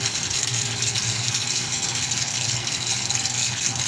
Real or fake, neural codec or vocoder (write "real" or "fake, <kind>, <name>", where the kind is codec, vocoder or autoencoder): fake, codec, SNAC